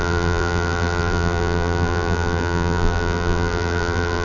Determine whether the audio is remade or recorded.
remade